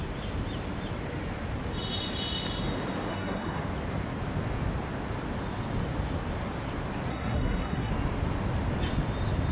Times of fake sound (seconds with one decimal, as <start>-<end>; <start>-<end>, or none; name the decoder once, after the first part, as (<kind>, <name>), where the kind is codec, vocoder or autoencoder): 3.1-3.6 (codec, SNAC); 7.1-7.9